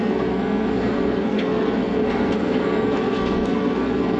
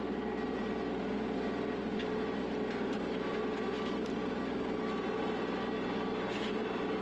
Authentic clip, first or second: second